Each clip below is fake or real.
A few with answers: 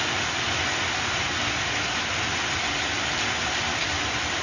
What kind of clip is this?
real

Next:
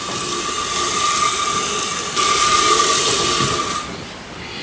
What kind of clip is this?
real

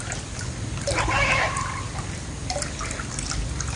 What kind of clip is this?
real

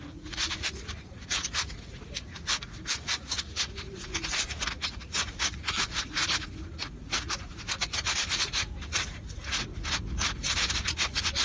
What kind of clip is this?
fake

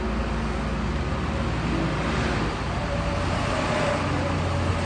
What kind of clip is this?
real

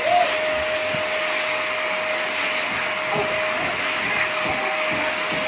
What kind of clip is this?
real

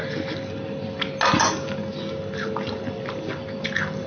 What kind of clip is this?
real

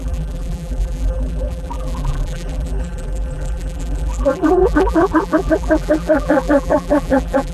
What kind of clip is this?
fake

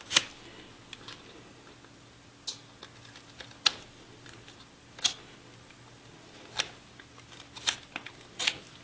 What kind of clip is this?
real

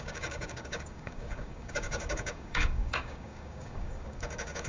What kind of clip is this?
fake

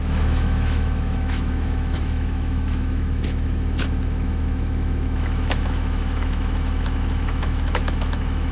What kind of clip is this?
fake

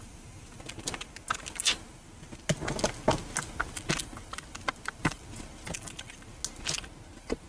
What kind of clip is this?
real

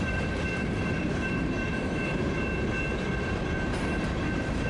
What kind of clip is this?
fake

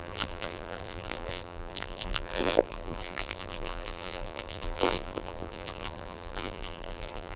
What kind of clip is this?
fake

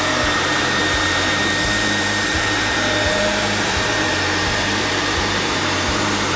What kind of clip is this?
fake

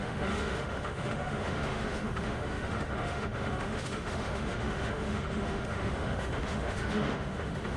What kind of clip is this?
fake